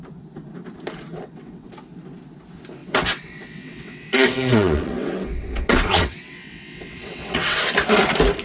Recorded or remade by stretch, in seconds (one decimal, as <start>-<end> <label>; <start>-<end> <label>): 0.0-1.1 recorded; 1.1-1.7 remade; 1.7-2.8 recorded; 2.8-7.6 remade; 7.6-8.4 recorded